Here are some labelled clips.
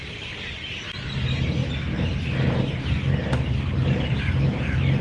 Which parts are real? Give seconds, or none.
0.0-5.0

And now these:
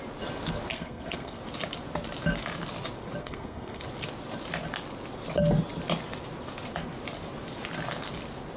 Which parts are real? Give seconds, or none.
0.0-0.7; 1.4-3.2; 3.8-8.6

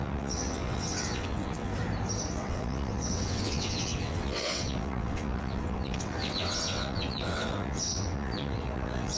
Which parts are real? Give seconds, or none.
1.7-2.3

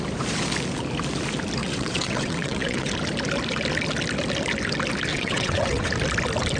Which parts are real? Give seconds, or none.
0.0-1.6; 2.9-5.1; 5.9-6.6